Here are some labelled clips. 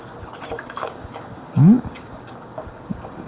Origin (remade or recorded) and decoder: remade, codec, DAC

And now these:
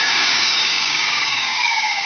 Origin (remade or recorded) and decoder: remade, codec, DAC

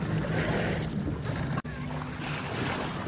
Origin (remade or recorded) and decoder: recorded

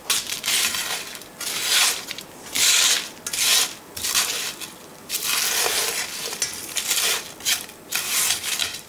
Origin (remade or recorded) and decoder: recorded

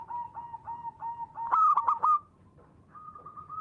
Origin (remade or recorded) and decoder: recorded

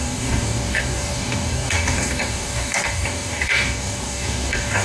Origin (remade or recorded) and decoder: remade, codec, DAC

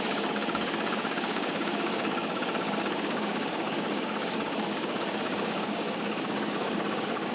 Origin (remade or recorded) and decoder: remade, codec, DAC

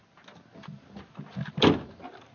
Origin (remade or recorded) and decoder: recorded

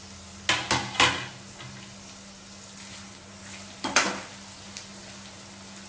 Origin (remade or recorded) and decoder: recorded